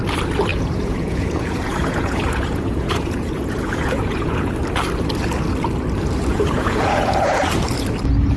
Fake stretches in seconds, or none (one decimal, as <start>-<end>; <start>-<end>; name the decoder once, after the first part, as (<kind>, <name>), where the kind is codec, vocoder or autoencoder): 0.5-4.5 (vocoder, Vocos); 6.3-7.4